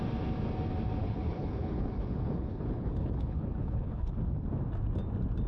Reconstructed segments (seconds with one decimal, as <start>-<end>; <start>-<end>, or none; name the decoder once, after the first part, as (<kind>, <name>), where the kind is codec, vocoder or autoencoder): 1.0-4.1 (codec, HILCodec)